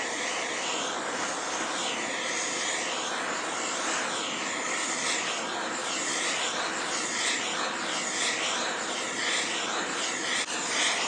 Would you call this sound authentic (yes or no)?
yes